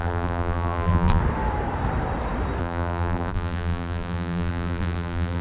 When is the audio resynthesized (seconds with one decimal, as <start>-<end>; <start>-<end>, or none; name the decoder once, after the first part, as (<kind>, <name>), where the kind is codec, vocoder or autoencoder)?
0.0-1.2 (vocoder, BigVGAN v2); 2.6-5.4